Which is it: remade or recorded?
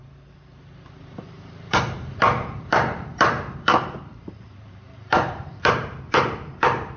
remade